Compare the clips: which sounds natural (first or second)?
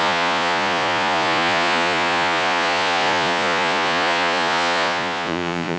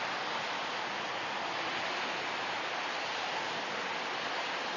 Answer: second